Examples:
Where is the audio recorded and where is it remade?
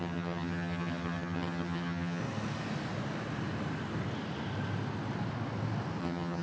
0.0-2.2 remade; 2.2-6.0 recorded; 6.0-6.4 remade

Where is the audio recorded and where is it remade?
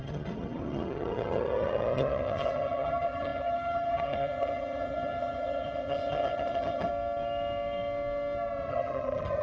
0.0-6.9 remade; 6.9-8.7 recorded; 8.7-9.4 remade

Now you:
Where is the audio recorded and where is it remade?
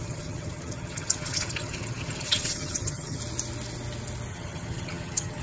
0.0-3.2 remade; 3.2-4.3 recorded; 4.3-5.4 remade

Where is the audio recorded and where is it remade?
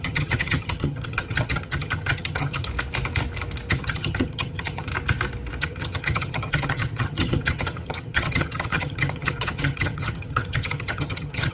0.0-2.7 remade; 2.7-3.7 recorded; 3.7-4.9 remade; 4.9-5.6 recorded; 5.6-11.5 remade